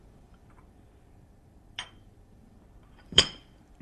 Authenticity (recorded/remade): remade